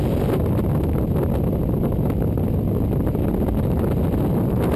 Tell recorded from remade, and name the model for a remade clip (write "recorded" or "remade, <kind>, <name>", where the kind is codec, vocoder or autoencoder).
recorded